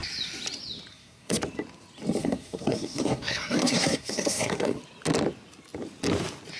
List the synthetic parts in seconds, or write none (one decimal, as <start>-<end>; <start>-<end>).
0.9-1.4; 2.2-4.8